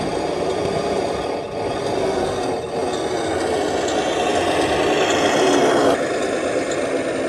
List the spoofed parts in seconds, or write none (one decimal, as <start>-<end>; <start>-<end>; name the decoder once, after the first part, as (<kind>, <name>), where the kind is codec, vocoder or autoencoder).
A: none